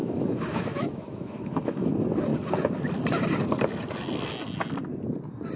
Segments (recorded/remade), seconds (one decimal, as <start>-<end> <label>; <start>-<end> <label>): 0.0-1.9 remade; 1.9-5.6 recorded